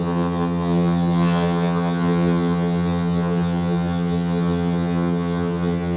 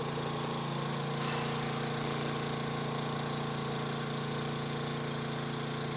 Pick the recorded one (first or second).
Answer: second